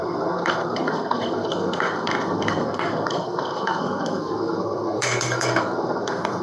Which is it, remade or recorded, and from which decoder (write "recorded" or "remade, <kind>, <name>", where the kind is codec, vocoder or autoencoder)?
remade, codec, SNAC